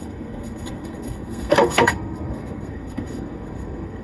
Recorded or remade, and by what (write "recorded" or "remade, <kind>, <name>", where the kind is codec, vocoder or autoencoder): remade, codec, SNAC